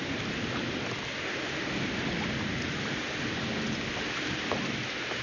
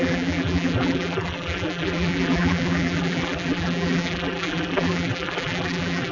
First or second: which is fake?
second